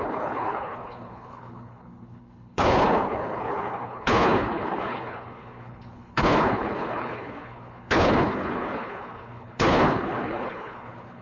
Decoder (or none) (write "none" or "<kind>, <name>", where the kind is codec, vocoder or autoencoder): codec, HILCodec